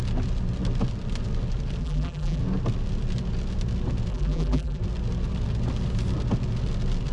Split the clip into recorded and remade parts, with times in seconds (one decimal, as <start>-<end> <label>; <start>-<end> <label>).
0.0-1.8 recorded; 1.8-2.4 remade; 2.4-4.1 recorded; 4.1-4.8 remade; 4.8-7.1 recorded